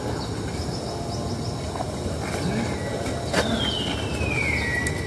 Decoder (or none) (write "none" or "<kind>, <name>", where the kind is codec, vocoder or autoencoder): none